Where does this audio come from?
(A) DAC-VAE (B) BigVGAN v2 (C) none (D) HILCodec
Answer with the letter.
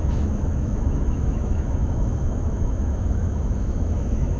A